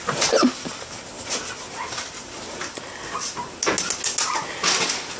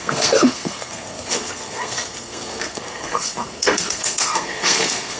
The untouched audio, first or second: first